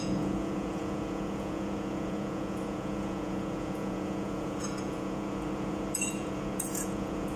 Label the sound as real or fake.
fake